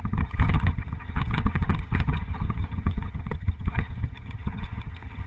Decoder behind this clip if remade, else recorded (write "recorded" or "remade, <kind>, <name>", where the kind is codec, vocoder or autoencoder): remade, vocoder, HiFi-GAN